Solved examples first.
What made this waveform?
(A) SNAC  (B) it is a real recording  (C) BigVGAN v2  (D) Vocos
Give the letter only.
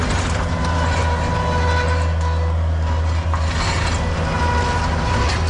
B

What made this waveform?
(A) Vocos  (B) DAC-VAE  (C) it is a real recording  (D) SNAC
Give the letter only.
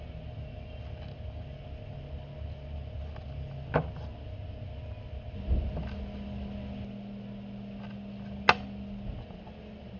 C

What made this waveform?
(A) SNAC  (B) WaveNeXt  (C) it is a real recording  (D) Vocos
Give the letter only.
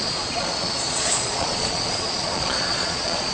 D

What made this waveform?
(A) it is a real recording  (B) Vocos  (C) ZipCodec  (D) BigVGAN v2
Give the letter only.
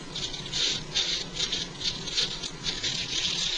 B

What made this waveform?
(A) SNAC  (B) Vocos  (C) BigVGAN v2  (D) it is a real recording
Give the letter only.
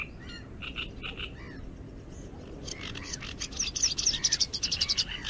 D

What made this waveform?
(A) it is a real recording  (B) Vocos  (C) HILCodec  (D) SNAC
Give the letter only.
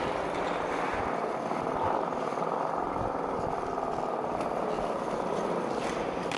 A